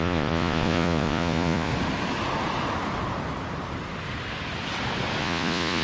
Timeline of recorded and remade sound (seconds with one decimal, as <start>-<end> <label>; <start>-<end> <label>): 0.0-1.7 remade; 1.7-5.2 recorded; 5.2-5.8 remade